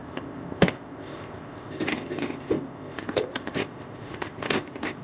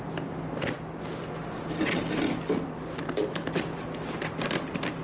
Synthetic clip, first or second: first